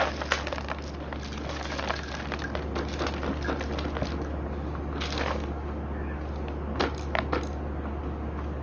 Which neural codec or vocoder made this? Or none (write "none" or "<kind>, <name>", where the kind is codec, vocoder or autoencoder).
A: none